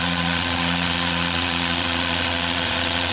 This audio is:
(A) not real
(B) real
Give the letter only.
A